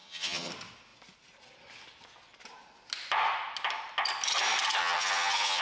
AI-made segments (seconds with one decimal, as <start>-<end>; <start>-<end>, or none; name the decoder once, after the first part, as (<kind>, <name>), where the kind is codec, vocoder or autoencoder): 0.0-0.5 (vocoder, HiFi-GAN); 4.8-5.6